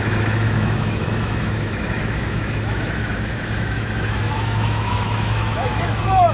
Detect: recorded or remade remade